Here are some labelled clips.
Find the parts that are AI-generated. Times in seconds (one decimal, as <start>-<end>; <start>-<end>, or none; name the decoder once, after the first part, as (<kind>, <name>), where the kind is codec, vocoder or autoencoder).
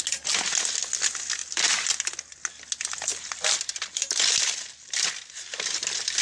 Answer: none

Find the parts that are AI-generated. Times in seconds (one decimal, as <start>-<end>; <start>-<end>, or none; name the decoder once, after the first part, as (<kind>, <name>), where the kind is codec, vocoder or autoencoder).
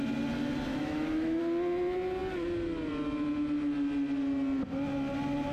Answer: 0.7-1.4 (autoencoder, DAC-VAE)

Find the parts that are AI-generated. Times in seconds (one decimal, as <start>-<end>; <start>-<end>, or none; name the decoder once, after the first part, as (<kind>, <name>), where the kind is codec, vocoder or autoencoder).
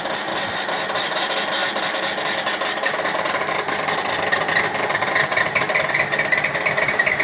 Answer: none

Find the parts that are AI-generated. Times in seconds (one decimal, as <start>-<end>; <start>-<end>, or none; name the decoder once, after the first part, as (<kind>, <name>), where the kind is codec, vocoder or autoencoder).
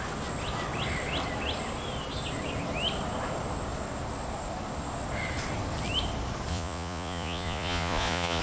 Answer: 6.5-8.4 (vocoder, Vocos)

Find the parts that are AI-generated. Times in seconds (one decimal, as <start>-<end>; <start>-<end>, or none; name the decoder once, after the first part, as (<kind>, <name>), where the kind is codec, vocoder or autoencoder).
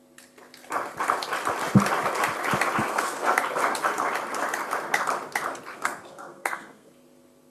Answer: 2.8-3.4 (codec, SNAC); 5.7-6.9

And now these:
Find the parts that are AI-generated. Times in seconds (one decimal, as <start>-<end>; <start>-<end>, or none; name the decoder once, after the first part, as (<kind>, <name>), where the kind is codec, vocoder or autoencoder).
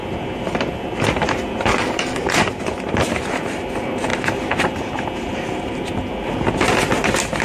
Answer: 1.7-2.5 (codec, DAC)